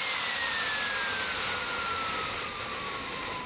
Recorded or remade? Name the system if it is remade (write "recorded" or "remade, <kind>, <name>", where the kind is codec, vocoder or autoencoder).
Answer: recorded